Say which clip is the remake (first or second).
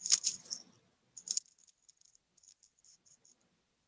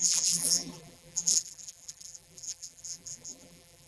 second